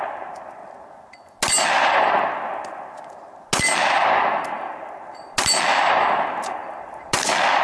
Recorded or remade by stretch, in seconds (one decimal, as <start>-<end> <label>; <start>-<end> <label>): 0.0-7.6 recorded